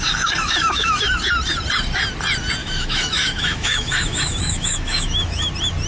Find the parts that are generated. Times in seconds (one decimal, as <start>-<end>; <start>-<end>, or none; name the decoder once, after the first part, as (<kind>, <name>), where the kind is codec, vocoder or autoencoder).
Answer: 0.4-1.2 (autoencoder, DAC-VAE); 2.6-5.5